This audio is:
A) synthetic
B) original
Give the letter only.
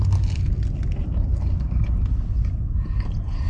B